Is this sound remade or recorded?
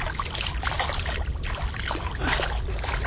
recorded